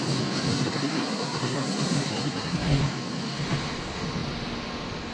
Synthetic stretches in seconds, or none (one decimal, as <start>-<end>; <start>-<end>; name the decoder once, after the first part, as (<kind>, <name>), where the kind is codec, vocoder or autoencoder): 0.5-2.8 (codec, SNAC)